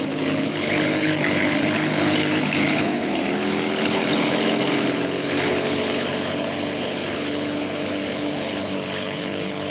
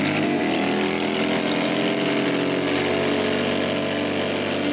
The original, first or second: second